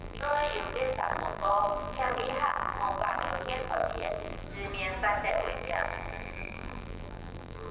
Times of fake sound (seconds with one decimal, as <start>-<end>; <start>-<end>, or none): 0.0-4.5; 5.3-7.7